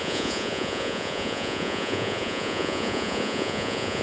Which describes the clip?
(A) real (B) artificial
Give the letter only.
B